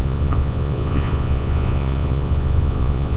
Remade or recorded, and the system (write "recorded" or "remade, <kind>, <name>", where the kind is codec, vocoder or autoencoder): remade, vocoder, Vocos